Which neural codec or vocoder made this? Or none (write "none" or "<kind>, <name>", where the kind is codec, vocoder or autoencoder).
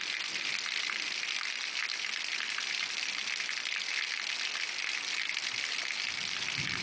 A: vocoder, BigVGAN v2